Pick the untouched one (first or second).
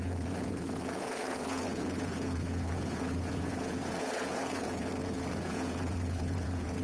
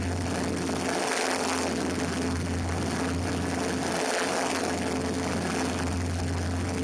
second